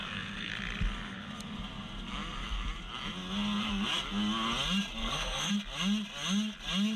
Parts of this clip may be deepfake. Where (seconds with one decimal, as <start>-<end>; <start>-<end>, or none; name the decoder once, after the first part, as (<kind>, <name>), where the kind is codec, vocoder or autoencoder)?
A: 0.0-0.5 (codec, SNAC); 5.0-5.5